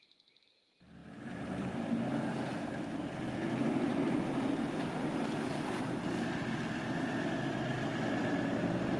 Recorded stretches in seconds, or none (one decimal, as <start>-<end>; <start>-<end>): 0.0-1.0; 5.9-9.0